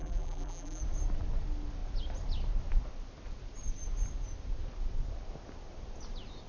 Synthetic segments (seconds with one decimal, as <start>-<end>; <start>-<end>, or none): 0.0-0.8